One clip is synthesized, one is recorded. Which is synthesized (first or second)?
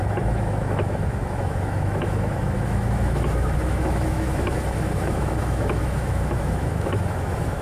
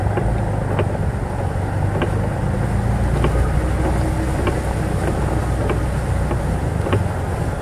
first